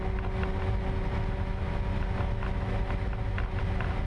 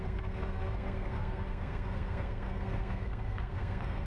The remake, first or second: second